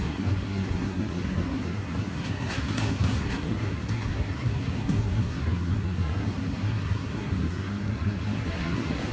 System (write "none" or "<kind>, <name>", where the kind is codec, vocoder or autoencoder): codec, SNAC